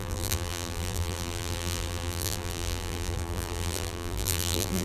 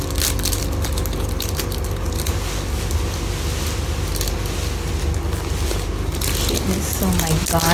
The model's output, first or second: first